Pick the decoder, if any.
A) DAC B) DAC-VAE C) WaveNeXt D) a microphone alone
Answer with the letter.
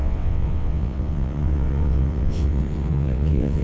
C